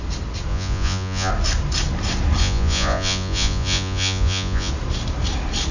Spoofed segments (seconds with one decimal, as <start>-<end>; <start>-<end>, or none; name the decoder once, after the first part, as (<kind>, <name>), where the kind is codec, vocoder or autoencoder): 0.5-1.3 (vocoder, Vocos); 2.4-4.7